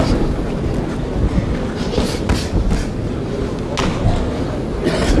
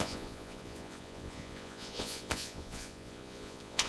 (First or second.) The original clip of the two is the first